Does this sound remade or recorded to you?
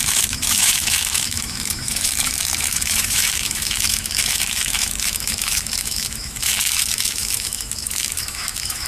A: remade